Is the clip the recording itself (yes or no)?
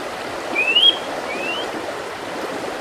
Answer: no